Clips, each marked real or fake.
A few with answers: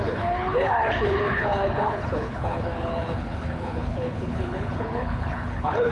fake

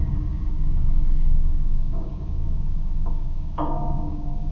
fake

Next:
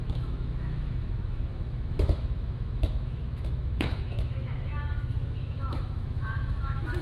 fake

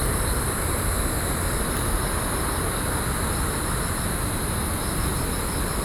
real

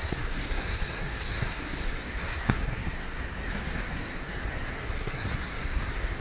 fake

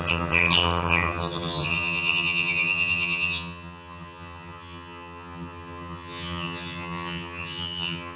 fake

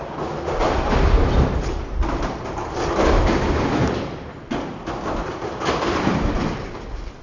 real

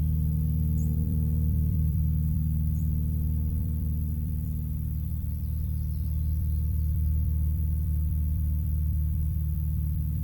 fake